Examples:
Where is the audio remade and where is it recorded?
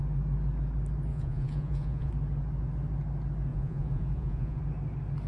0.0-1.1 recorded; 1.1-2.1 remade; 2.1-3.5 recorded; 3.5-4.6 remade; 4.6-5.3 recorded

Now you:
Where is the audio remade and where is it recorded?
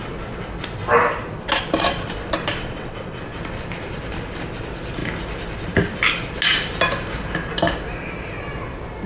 0.0-2.6 recorded; 2.6-3.2 remade; 3.2-9.1 recorded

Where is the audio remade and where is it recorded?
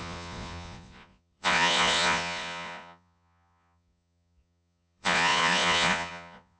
0.0-6.6 remade